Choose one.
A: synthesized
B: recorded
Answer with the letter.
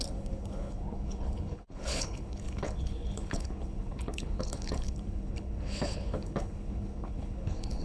A